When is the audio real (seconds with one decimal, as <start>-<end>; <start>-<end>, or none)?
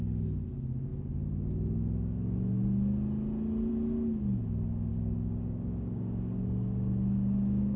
0.0-4.9